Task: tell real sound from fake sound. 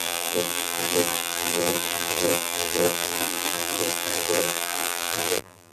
fake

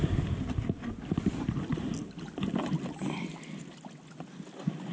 real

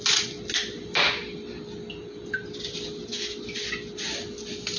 real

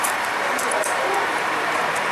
fake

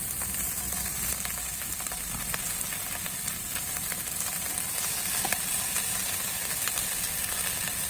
real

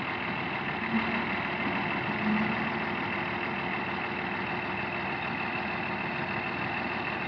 real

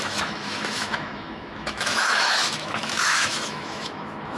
fake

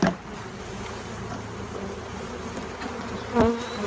real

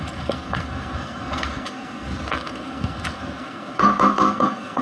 fake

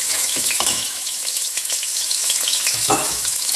fake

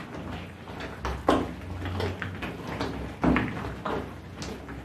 real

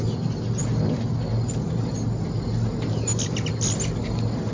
real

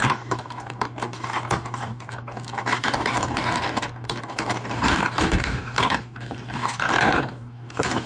fake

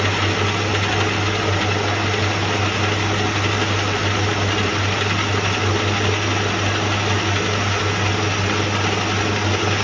real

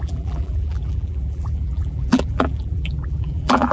fake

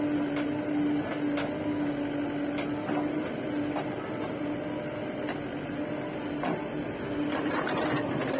real